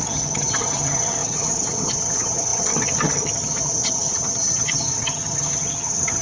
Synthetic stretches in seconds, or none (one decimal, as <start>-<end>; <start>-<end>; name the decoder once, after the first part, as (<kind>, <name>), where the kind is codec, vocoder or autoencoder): 0.0-6.2 (vocoder, HiFi-GAN)

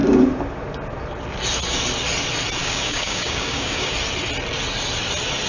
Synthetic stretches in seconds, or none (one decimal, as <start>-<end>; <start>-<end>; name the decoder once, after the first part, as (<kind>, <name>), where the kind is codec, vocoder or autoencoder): 2.6-3.9 (codec, DAC)

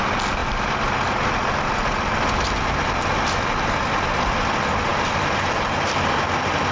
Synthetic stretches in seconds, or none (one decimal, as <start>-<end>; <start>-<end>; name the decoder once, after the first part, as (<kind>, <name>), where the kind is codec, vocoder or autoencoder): 4.9-5.5 (vocoder, BigVGAN v2)

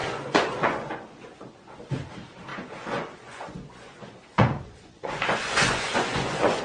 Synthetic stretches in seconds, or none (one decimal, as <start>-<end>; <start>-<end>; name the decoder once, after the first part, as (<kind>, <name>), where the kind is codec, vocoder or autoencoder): 0.0-1.7 (vocoder, Vocos); 2.5-6.6